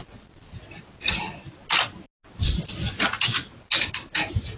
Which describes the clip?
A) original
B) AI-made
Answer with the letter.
A